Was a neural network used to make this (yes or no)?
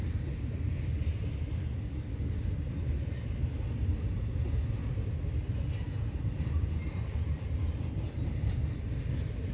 no